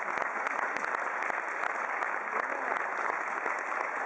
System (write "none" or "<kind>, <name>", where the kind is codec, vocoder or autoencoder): none